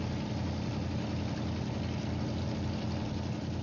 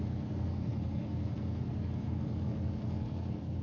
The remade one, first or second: second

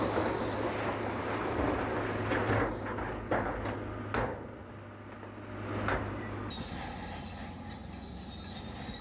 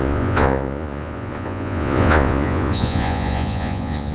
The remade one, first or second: second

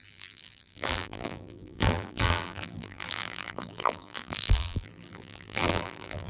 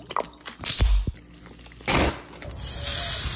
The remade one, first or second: first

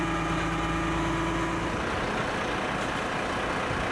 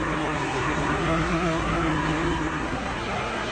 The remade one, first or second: second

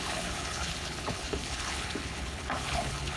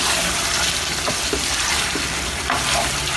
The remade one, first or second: first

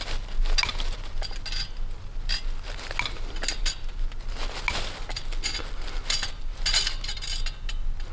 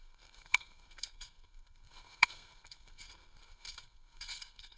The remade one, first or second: second